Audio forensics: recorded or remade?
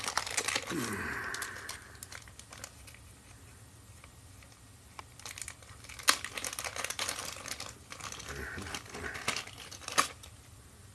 recorded